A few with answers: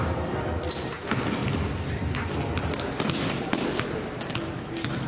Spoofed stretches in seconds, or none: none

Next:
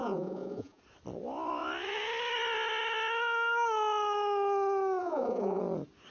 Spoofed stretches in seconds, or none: 0.0-0.8 (vocoder, Vocos); 5.0-5.6

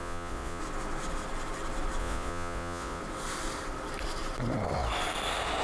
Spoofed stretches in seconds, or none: 0.0-0.6 (vocoder, Vocos); 2.0-3.0

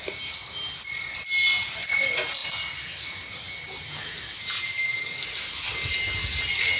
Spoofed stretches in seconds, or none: none

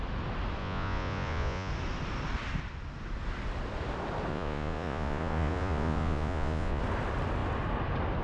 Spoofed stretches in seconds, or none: 0.6-1.7 (vocoder, Vocos); 4.3-6.8

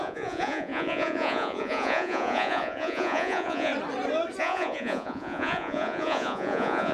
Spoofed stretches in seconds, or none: 0.0-3.7 (vocoder, Vocos); 4.4-6.9

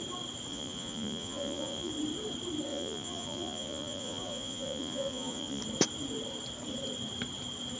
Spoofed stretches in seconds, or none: 0.5-1.9 (vocoder, Vocos); 2.7-5.6